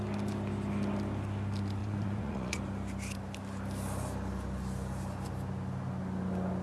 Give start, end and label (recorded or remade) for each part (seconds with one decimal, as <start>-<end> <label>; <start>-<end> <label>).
0.0-1.8 recorded; 1.8-2.6 remade; 2.6-6.6 recorded